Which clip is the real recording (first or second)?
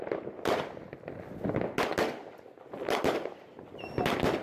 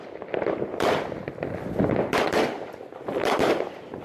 first